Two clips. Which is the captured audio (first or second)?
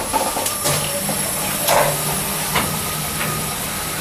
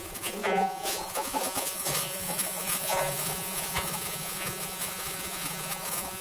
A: first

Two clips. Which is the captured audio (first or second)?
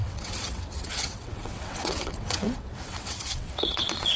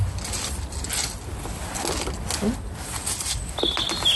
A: second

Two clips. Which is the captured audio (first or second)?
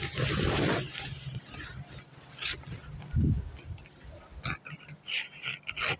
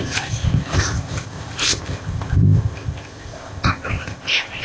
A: first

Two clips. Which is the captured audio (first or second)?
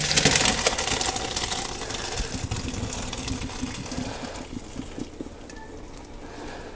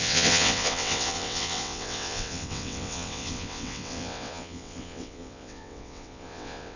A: first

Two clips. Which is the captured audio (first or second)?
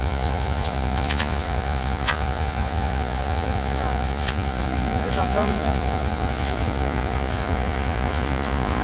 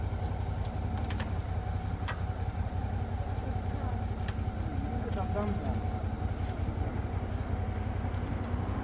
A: second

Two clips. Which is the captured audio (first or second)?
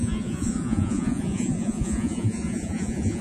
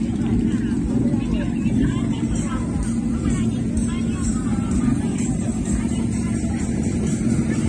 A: second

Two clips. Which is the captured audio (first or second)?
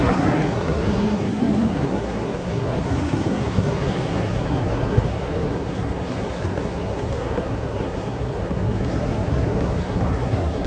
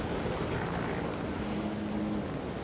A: second